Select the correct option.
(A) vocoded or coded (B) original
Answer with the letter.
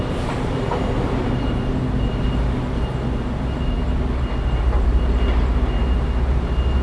B